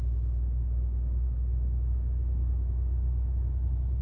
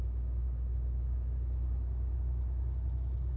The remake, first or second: first